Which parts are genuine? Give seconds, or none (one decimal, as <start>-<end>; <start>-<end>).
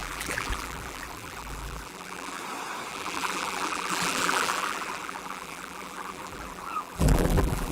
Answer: 2.4-2.9